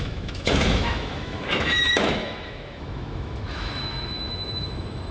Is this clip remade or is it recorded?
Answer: remade